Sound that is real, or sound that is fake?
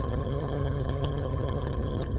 fake